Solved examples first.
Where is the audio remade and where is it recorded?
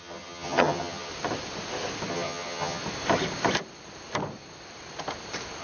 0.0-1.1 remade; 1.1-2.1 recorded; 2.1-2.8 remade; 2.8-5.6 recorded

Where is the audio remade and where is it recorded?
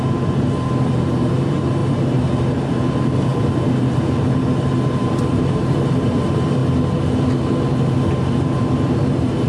0.0-6.6 remade; 6.6-8.1 recorded; 8.1-9.5 remade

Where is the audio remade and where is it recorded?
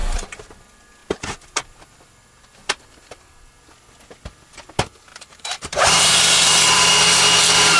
0.0-0.6 remade; 0.6-5.1 recorded; 5.1-7.2 remade; 7.2-7.8 recorded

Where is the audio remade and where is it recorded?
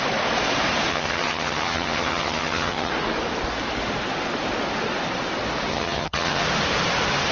0.0-0.9 recorded; 0.9-2.9 remade; 2.9-5.7 recorded; 5.7-6.4 remade; 6.4-7.3 recorded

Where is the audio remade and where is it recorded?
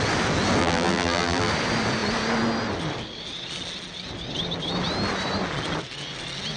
0.0-0.6 recorded; 0.6-1.5 remade; 1.5-6.6 recorded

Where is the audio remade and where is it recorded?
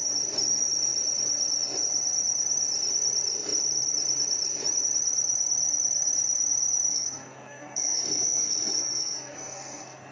0.0-6.9 recorded; 6.9-10.1 remade